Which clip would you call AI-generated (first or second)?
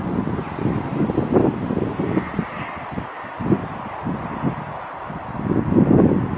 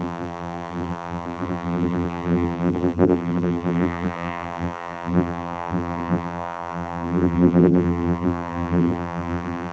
second